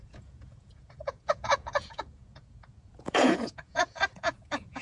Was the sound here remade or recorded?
remade